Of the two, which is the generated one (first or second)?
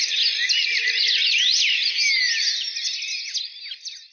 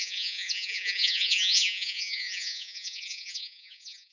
second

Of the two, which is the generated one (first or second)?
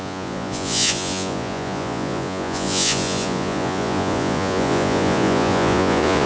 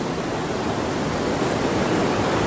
first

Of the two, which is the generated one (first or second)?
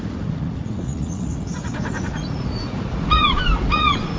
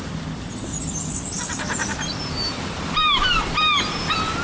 first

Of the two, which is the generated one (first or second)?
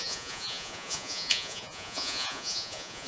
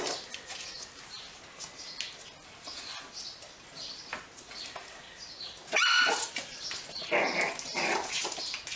first